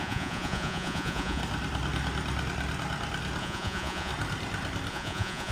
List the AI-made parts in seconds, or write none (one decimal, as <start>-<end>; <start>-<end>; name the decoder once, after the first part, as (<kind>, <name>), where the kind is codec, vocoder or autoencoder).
0.0-1.4 (vocoder, Vocos); 3.4-4.1; 4.9-5.5